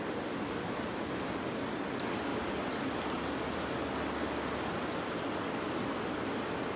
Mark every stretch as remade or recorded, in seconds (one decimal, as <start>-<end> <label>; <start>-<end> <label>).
0.0-6.8 recorded